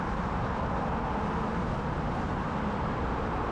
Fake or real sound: real